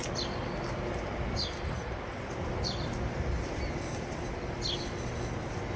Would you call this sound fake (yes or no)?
no